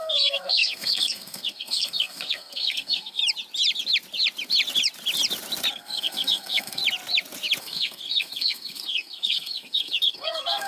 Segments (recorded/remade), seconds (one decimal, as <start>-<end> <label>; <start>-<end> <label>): 0.0-3.2 remade; 3.2-5.7 recorded; 5.7-6.8 remade; 6.8-7.6 recorded; 7.6-10.7 remade